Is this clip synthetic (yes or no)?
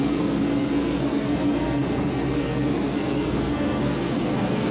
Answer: yes